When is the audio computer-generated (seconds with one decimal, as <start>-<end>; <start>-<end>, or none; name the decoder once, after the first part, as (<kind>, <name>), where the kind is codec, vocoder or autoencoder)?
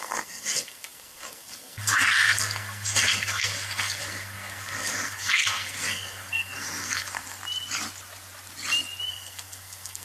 0.0-7.4 (codec, SNAC); 9.1-10.0